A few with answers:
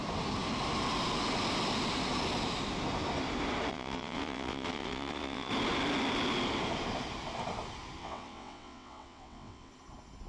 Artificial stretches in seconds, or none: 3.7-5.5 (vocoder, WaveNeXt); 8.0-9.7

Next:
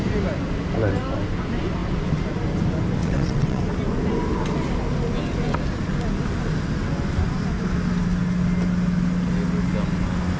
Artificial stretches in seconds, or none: 3.0-3.6 (vocoder, WaveNeXt)

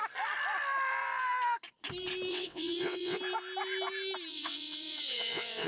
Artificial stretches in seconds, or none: 2.3-3.2 (vocoder, WaveNeXt); 4.3-5.7

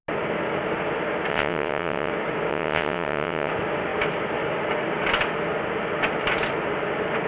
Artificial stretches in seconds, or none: 1.3-2.1 (vocoder, WaveNeXt); 2.5-3.5

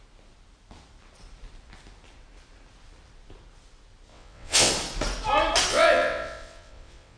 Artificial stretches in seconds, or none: 4.1-4.7 (vocoder, WaveNeXt); 5.7-7.2

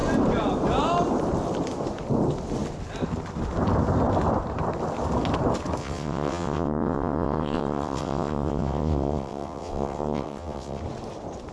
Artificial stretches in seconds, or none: 5.8-10.8 (vocoder, WaveNeXt)

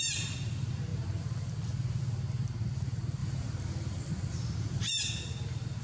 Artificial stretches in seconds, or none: none